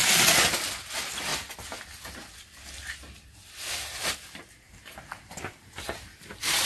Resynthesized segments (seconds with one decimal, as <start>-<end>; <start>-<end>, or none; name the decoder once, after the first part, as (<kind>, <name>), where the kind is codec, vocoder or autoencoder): none